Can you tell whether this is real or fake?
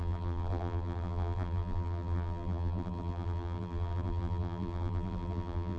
fake